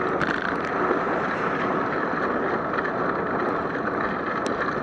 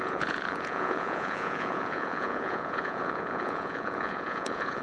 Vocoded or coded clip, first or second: second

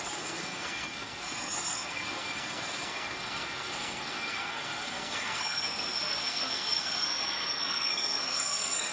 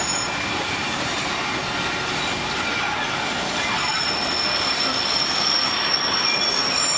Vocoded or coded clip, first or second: first